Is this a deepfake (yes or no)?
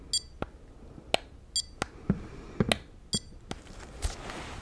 no